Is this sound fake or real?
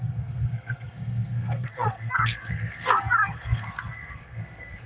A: fake